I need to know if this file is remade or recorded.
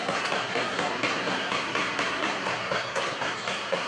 remade